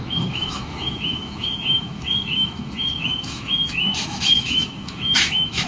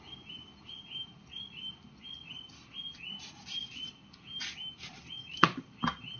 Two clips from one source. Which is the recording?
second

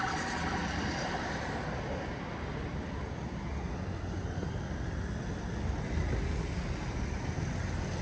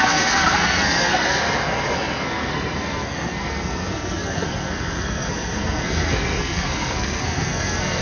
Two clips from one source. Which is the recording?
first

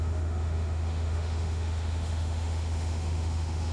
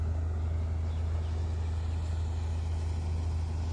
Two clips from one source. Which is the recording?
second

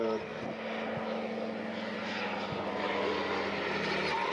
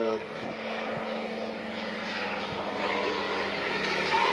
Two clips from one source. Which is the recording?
first